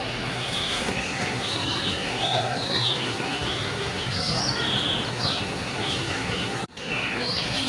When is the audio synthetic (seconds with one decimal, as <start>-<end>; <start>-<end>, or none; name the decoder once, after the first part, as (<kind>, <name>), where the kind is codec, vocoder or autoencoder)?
0.0-4.4 (codec, SNAC); 5.1-7.7